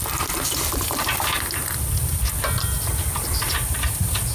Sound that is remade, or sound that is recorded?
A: recorded